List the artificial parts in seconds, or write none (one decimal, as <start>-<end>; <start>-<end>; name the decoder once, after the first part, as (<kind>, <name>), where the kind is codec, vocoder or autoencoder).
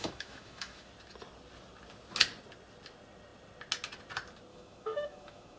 0.0-0.9 (autoencoder, DAC-VAE); 4.5-5.6